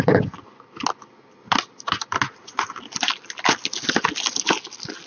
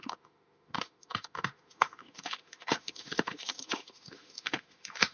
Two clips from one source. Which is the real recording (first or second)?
first